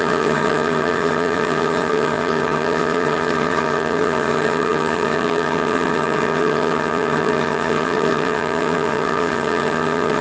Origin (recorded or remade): remade